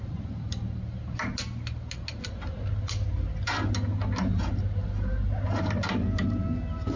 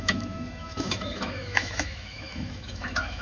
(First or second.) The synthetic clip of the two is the second